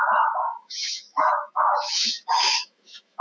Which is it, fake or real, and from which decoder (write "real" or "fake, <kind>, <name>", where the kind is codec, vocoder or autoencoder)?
fake, autoencoder, DAC-VAE